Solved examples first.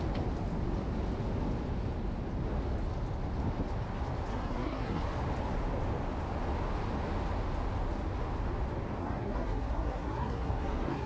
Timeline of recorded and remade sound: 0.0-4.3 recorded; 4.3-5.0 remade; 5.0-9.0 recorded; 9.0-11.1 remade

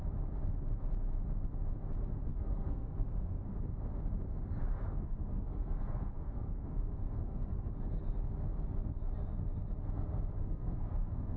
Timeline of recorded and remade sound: 0.0-2.3 recorded; 2.3-3.6 remade; 3.6-4.7 recorded; 4.7-7.7 remade; 7.7-10.4 recorded; 10.4-11.4 remade